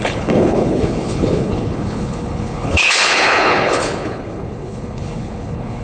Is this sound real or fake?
fake